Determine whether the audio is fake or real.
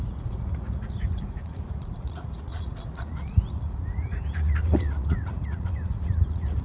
fake